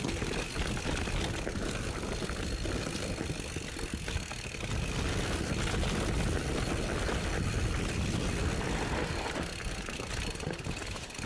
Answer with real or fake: real